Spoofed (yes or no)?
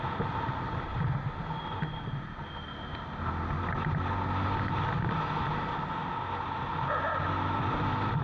no